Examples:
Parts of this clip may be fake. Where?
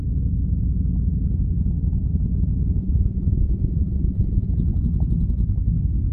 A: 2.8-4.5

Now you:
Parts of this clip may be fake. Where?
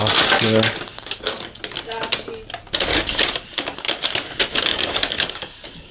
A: 0.9-1.6; 2.9-3.9; 4.7-5.9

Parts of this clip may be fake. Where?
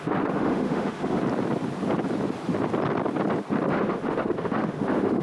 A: 0.0-1.2; 3.7-5.2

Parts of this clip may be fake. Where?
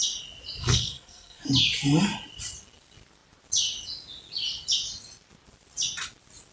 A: 0.6-1.5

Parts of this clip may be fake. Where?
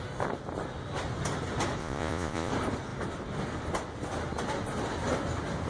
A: 1.8-2.5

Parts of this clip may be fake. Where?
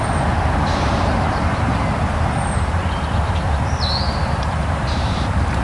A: 0.0-2.8; 3.7-5.6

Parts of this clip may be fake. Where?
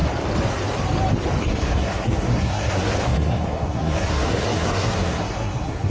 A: 1.4-5.9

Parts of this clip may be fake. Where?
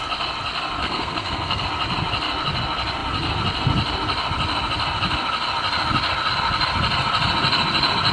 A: 0.8-1.6